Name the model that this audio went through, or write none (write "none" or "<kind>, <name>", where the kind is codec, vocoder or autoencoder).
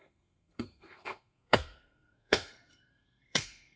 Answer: codec, SNAC